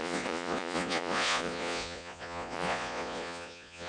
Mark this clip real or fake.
fake